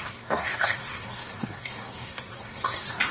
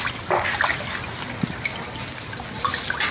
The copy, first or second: first